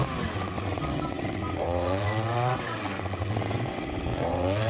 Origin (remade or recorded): remade